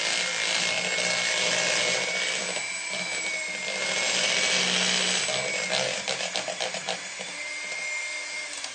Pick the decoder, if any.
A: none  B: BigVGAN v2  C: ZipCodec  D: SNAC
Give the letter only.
A